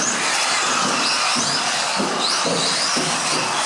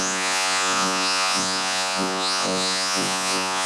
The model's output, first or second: second